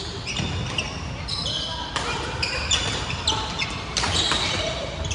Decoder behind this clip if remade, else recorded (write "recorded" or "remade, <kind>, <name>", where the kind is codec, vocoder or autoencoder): recorded